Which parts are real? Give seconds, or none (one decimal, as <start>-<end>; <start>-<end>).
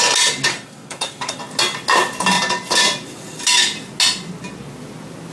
0.0-0.5; 1.4-5.3